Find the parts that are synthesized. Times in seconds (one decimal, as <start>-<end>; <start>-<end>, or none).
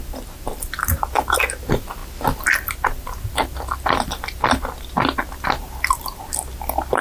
none